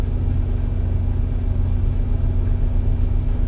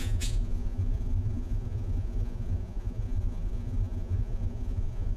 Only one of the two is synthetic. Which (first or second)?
second